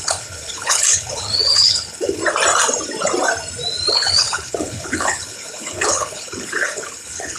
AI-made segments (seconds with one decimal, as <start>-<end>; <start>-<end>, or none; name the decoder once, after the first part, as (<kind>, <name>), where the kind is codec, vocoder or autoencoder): 0.0-2.2 (codec, HILCodec); 3.9-7.4